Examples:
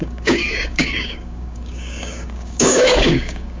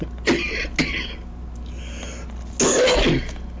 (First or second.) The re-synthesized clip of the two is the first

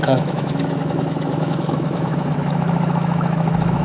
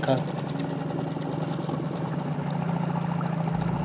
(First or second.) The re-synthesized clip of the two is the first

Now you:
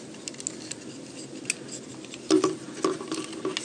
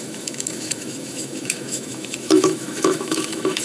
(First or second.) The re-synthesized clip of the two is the second